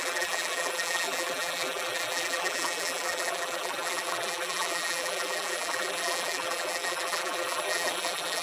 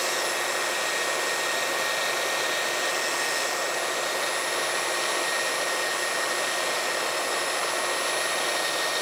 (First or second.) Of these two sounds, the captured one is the second